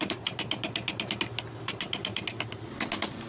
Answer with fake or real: real